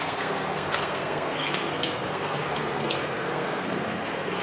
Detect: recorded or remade remade